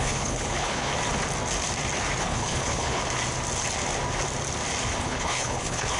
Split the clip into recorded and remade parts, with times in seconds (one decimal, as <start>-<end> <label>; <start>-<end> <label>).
0.0-0.9 remade; 0.9-2.2 recorded; 2.2-3.0 remade; 3.0-5.0 recorded; 5.0-6.0 remade

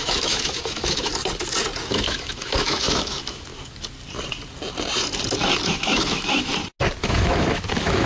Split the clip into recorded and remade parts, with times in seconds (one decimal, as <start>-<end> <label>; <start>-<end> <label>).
0.0-1.1 remade; 1.1-1.9 recorded; 1.9-3.5 remade; 3.5-5.7 recorded; 5.7-6.5 remade; 6.5-7.0 recorded; 7.0-8.1 remade